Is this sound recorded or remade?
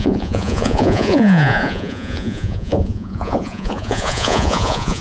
remade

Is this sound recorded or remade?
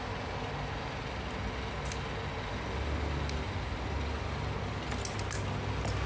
recorded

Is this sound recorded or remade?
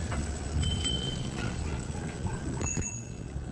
remade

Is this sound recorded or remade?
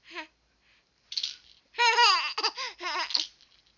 recorded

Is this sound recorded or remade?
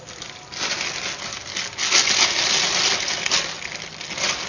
recorded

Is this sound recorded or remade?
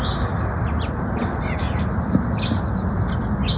recorded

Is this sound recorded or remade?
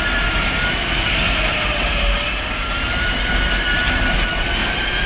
recorded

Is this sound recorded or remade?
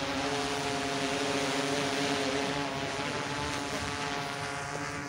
recorded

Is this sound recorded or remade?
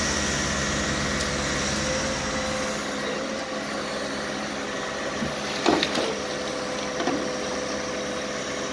recorded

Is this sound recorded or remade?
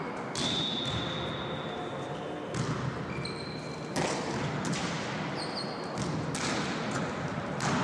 recorded